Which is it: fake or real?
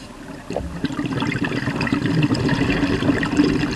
real